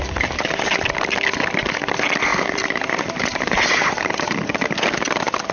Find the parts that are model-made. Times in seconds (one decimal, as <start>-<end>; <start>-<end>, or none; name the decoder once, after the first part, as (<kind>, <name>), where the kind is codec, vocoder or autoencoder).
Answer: 2.3-4.5 (vocoder, BigVGAN v2)